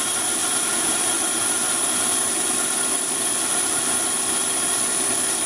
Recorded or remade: remade